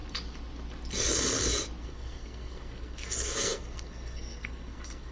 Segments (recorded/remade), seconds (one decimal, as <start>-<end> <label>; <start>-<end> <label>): 0.0-1.8 recorded; 1.8-5.1 remade